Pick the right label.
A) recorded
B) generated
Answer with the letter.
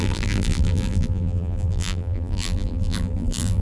B